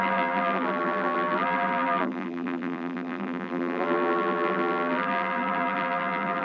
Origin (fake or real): fake